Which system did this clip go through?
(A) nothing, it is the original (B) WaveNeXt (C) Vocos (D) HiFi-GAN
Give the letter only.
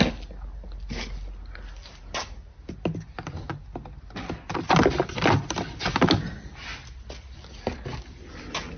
A